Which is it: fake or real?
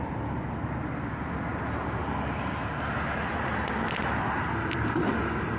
real